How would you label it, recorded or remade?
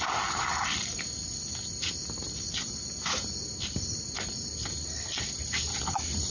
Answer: recorded